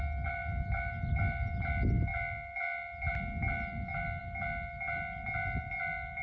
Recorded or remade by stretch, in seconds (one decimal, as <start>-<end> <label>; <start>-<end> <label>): 0.0-6.2 recorded